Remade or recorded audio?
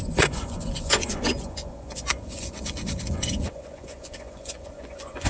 remade